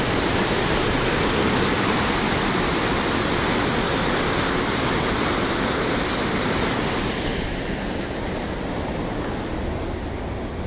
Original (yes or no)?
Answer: yes